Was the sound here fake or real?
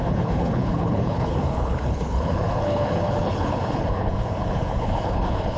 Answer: fake